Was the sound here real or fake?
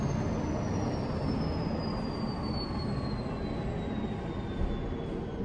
real